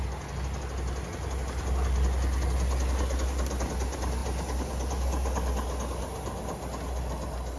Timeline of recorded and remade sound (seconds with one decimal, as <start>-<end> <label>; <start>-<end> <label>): 0.0-7.6 recorded